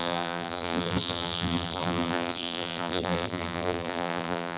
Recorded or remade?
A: remade